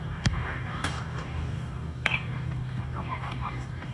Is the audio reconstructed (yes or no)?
yes